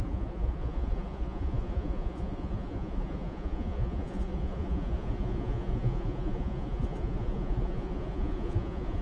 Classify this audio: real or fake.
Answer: fake